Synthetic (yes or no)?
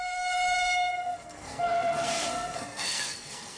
yes